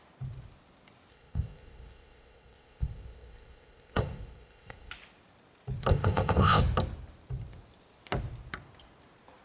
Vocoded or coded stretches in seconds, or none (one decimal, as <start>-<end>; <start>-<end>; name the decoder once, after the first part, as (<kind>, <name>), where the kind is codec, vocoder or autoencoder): 1.1-4.9 (codec, ZipCodec); 5.9-6.6